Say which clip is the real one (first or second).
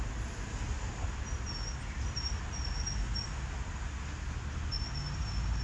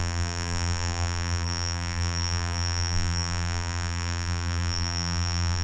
first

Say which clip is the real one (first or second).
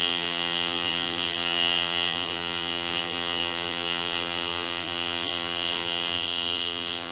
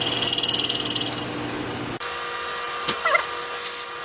second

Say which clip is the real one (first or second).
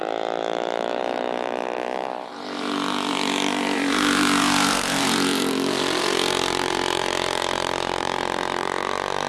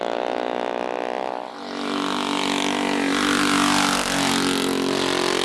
second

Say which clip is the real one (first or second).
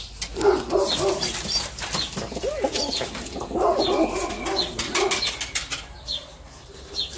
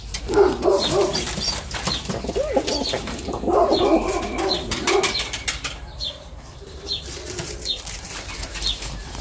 first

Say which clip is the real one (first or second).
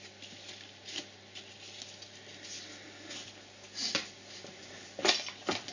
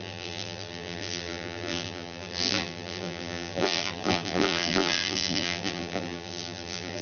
first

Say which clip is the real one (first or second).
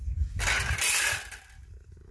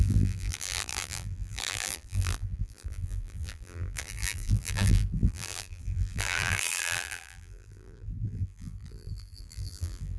first